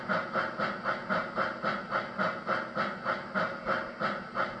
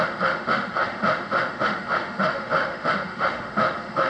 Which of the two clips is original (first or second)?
first